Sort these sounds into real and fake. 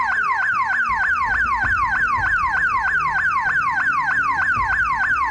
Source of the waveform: real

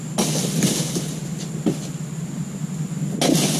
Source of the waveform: real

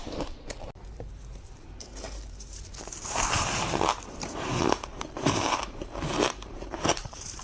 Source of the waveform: fake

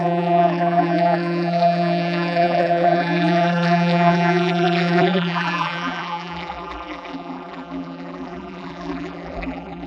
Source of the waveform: fake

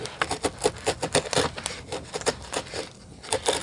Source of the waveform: real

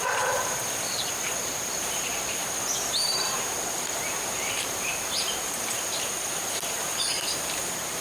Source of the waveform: fake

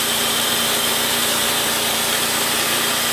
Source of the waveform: fake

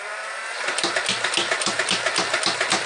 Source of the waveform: fake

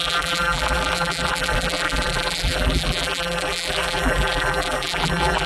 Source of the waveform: fake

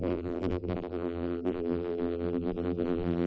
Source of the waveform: fake